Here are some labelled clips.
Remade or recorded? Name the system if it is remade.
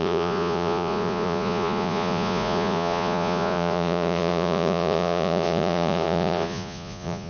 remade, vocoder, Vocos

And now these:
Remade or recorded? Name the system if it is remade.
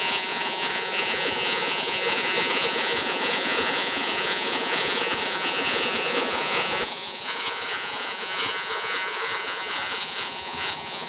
remade, vocoder, Vocos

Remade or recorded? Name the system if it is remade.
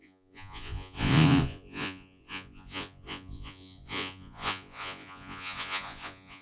remade, vocoder, Vocos